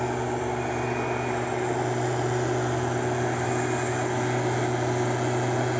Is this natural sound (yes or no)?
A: yes